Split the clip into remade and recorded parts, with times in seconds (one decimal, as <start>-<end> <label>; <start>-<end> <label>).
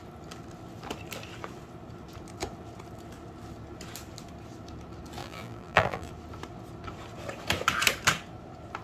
0.0-5.2 recorded; 5.2-6.1 remade; 6.1-8.8 recorded